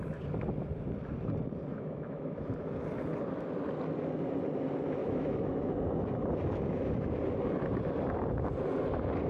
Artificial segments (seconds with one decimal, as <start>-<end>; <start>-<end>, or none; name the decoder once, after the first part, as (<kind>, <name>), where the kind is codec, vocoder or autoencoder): 1.7-2.5 (autoencoder, DAC-VAE); 5.0-5.7